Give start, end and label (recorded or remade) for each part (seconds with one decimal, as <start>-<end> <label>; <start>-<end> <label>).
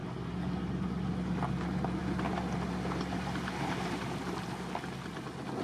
0.0-5.6 recorded